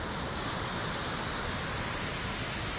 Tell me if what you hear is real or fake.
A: real